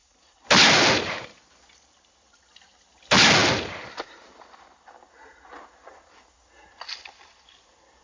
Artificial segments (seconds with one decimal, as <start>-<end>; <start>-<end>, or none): none